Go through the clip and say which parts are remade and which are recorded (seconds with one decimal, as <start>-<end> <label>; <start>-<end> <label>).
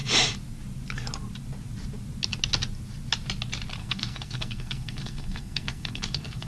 0.0-3.8 recorded; 3.8-6.5 remade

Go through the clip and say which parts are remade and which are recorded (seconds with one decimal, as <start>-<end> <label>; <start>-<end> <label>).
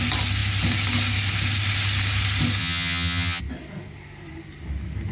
0.0-2.6 recorded; 2.6-3.4 remade; 3.4-5.1 recorded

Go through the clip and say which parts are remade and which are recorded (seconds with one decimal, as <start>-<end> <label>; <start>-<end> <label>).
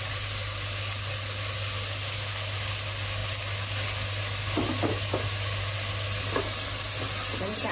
0.0-7.7 recorded